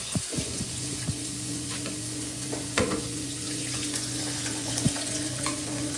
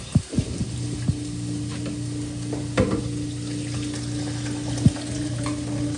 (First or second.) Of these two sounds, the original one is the second